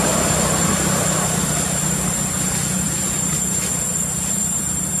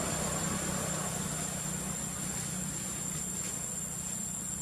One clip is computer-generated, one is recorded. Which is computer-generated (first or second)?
first